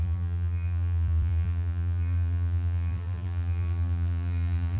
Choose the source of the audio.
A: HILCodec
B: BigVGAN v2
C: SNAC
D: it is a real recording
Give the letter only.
B